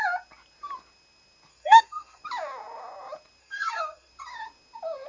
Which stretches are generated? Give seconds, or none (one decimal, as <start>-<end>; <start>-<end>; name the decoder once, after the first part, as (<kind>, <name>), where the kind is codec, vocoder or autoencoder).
1.5-2.2 (codec, SNAC); 3.4-4.1